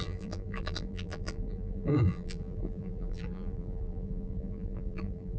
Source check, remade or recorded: remade